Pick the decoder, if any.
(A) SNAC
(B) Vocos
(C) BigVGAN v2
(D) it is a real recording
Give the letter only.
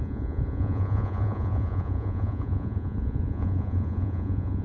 B